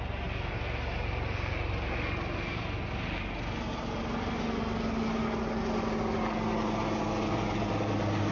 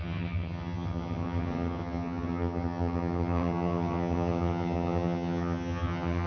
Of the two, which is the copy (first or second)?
second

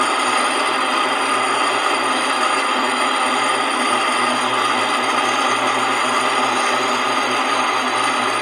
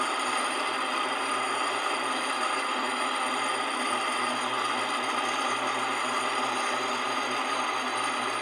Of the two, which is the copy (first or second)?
second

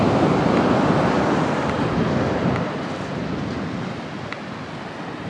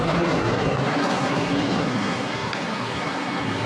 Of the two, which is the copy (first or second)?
second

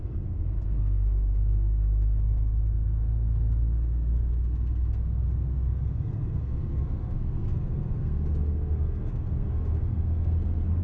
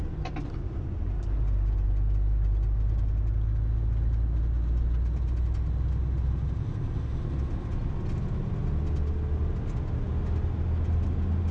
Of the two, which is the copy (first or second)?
first